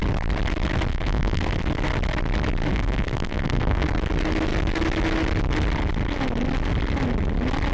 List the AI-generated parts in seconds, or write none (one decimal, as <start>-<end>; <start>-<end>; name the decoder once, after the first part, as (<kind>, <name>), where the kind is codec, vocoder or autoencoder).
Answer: 0.9-1.6 (codec, SNAC); 2.7-3.9